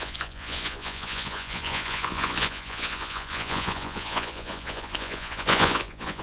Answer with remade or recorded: remade